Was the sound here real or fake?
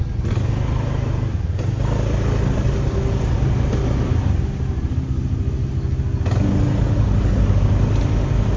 real